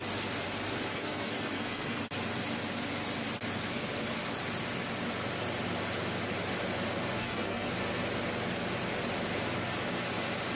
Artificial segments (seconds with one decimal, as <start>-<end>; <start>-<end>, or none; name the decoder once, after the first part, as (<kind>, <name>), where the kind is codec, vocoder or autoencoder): 0.9-2.0 (codec, SNAC); 7.2-7.7